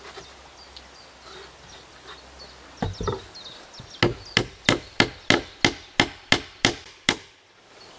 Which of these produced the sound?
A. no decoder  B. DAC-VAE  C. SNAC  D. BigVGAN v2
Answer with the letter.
A